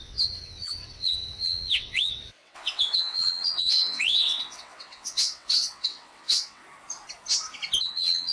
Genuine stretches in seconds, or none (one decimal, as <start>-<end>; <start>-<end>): 6.6-7.8